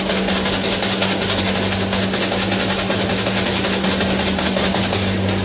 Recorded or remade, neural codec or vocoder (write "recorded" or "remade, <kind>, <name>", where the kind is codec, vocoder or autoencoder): recorded